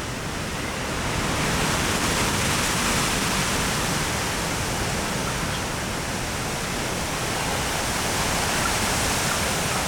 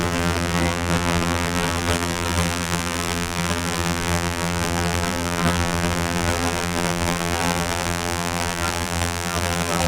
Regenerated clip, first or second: second